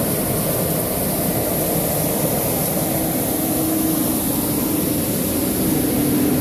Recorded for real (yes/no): yes